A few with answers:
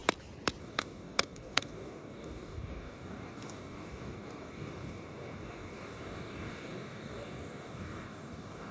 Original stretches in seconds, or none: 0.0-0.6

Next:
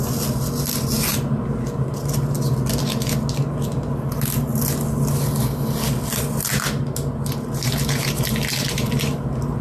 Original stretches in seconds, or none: 0.0-9.6

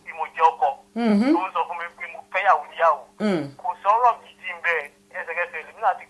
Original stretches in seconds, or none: 0.0-6.1

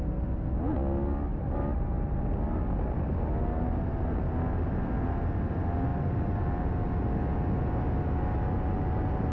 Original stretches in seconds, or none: 0.0-1.3; 3.4-9.3

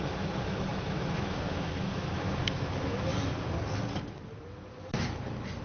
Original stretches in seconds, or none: 3.1-5.6

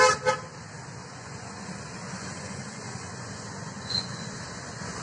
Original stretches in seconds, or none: 0.0-1.0; 1.7-2.1